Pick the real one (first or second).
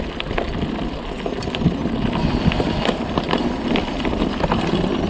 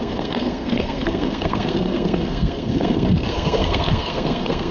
first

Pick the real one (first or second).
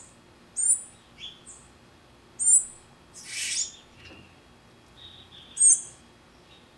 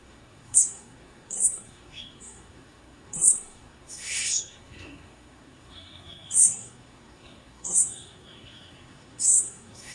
first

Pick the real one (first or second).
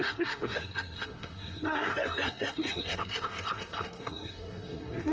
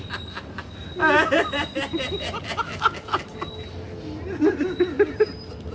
second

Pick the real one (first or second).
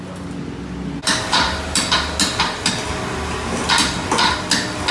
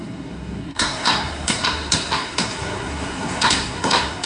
first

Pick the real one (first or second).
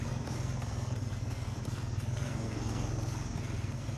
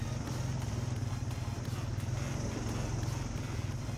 second